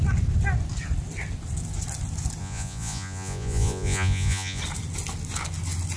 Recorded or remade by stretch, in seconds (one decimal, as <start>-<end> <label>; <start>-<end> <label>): 0.0-2.4 recorded; 2.4-4.6 remade; 4.6-6.0 recorded